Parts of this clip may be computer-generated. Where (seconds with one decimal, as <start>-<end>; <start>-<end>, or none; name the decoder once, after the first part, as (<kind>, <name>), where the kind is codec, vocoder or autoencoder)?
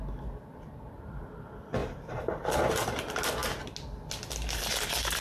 1.8-2.5 (vocoder, BigVGAN v2)